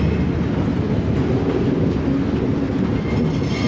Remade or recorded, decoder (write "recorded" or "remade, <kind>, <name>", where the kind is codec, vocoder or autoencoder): recorded